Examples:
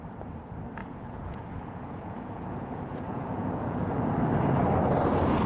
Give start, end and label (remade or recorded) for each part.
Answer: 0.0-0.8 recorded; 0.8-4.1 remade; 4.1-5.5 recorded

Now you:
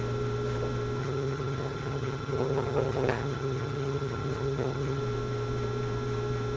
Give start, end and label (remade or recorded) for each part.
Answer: 0.0-1.0 recorded; 1.0-5.0 remade; 5.0-6.6 recorded

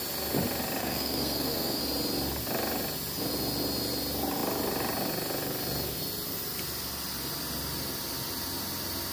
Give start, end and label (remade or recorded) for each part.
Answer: 0.0-0.8 recorded; 0.8-1.8 remade; 1.8-9.1 recorded

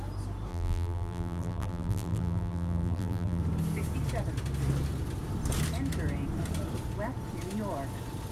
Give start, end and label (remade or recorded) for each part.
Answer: 0.0-0.5 recorded; 0.5-3.4 remade; 3.4-8.3 recorded

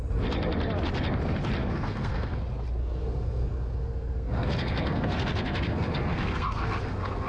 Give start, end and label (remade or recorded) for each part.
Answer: 0.0-1.6 recorded; 1.6-2.4 remade; 2.4-2.8 recorded; 2.8-7.3 remade

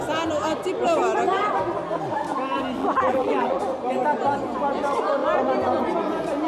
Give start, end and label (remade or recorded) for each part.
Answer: 0.0-2.8 recorded; 2.8-3.6 remade; 3.6-6.5 recorded

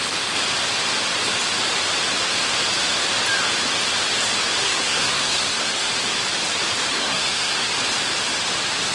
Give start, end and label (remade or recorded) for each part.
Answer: 0.0-4.6 recorded; 4.6-5.9 remade; 5.9-6.9 recorded; 6.9-7.7 remade; 7.7-8.9 recorded

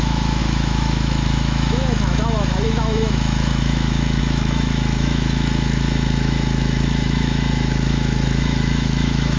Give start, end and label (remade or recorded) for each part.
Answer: 0.0-9.4 remade